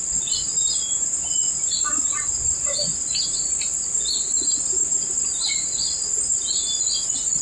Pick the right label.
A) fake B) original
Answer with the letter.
B